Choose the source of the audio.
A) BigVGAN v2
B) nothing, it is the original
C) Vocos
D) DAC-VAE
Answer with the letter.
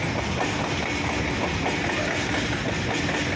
B